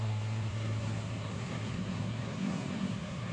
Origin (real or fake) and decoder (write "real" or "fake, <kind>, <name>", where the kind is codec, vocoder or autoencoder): fake, codec, SNAC